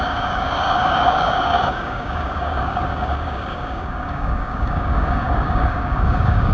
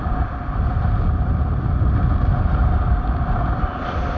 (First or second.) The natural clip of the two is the second